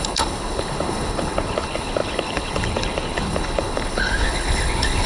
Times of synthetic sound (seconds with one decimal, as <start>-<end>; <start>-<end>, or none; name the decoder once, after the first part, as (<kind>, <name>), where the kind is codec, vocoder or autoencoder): 0.0-5.1 (codec, HILCodec)